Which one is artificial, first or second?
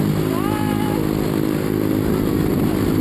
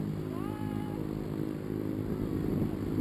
first